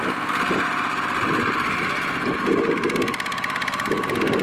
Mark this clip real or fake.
real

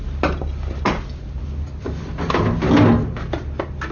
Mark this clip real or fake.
real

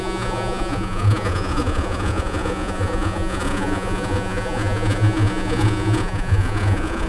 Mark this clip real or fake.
fake